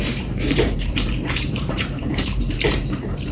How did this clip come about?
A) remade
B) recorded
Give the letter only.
A